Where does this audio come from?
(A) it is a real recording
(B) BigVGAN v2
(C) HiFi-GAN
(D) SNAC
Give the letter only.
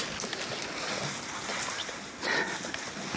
A